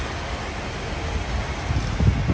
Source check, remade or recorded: recorded